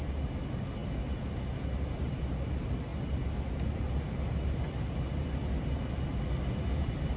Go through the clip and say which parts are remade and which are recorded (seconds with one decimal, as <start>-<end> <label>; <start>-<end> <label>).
0.0-7.2 recorded